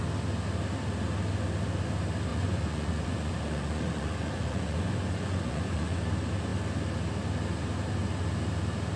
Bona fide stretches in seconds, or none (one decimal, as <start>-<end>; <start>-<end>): 0.0-2.3; 6.0-9.0